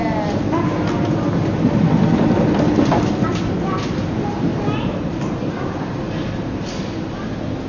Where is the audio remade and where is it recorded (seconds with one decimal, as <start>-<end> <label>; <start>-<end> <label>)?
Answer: 0.0-7.7 recorded